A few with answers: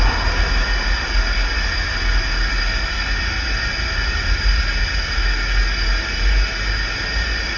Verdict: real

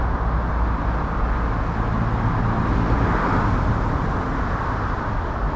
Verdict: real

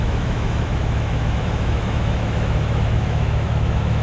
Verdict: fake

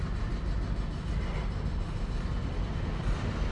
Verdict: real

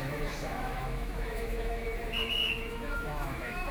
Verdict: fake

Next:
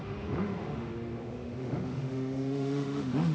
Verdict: fake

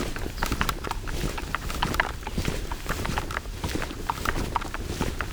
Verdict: real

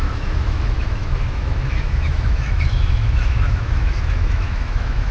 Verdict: fake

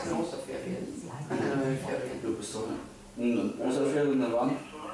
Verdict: real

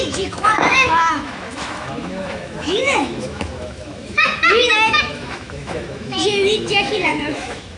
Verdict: fake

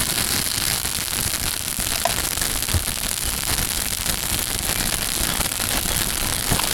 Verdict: real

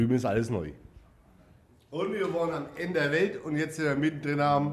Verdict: real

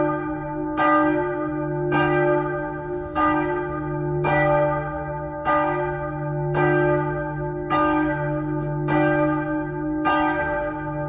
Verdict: fake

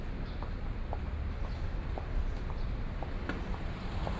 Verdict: real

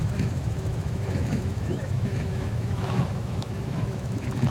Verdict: fake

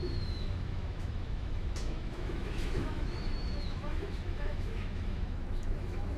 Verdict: fake